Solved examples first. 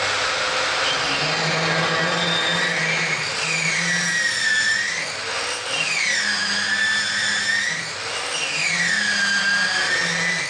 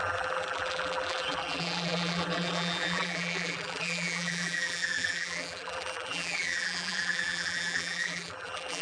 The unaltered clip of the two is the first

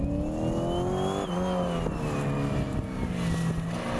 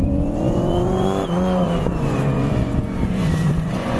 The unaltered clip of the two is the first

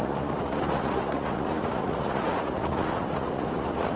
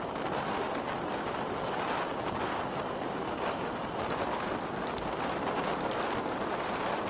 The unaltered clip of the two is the second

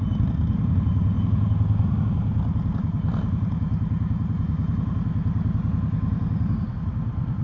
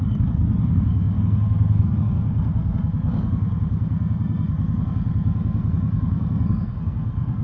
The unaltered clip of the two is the first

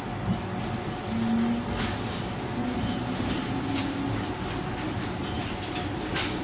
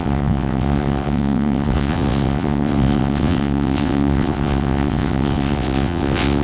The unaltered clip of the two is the first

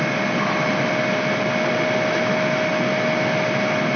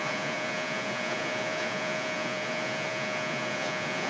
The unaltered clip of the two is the first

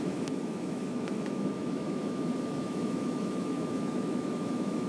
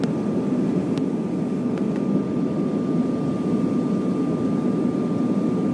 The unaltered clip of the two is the second